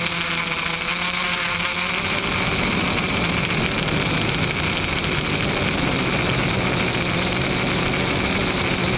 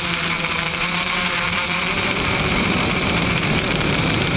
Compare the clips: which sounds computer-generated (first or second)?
second